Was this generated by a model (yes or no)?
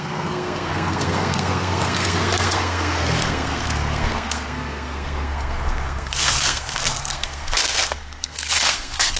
yes